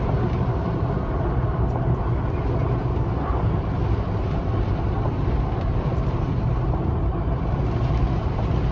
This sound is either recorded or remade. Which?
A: remade